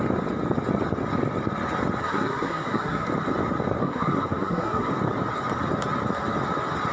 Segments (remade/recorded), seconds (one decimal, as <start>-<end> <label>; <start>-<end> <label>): 0.0-2.0 recorded; 2.0-3.1 remade; 3.1-3.8 recorded; 3.8-4.9 remade; 4.9-6.9 recorded